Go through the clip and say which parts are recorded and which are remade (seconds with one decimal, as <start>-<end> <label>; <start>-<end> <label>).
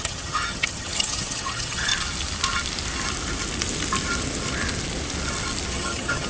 0.0-1.9 remade; 1.9-5.7 recorded; 5.7-6.3 remade